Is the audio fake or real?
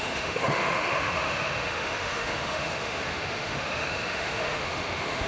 fake